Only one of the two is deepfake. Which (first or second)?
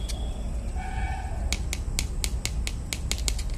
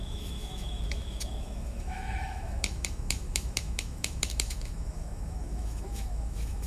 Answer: second